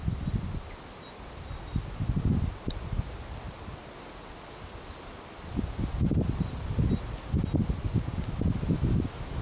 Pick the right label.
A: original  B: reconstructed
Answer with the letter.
A